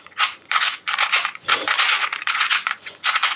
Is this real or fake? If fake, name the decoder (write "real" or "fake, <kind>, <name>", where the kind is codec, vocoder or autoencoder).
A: fake, vocoder, Vocos